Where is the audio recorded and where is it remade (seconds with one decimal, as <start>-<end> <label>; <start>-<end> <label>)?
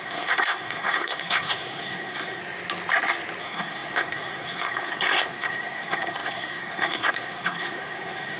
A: 0.0-2.4 remade; 2.4-3.4 recorded; 3.4-8.4 remade